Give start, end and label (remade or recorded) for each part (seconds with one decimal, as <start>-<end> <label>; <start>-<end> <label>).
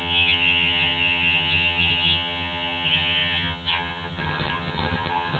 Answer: 0.0-5.4 remade